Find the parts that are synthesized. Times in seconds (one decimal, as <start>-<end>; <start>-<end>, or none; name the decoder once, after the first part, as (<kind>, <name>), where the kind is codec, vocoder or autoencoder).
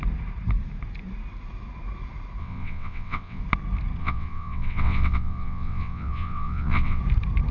2.4-3.4 (vocoder, WaveNeXt); 4.0-7.0